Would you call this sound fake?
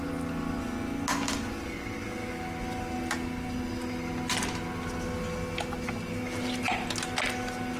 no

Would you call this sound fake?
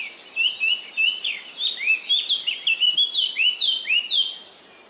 no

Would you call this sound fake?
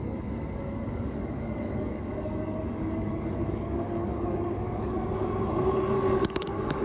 yes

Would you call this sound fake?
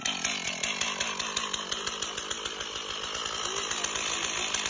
no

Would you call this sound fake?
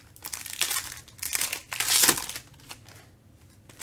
no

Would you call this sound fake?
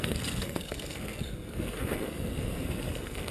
yes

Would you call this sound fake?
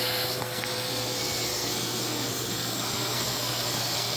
yes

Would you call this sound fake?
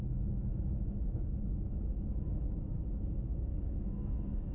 yes